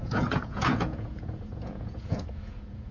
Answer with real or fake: fake